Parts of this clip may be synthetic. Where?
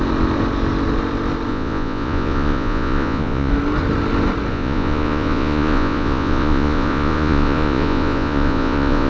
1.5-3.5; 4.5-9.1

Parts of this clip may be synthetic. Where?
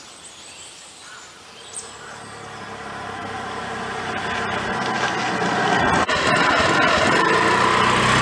none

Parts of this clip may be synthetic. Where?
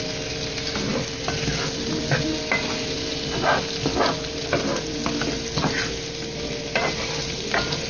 none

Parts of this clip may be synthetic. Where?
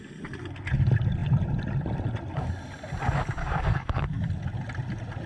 3.4-4.3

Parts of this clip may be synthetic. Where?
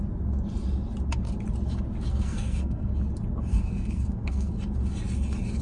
2.1-2.9; 3.5-4.5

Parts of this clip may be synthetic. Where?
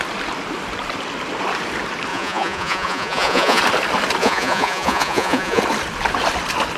2.1-3.6; 4.2-5.6